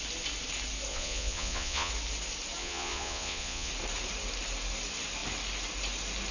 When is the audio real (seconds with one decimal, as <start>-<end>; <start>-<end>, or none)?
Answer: 0.0-0.9; 1.9-2.6; 3.7-6.3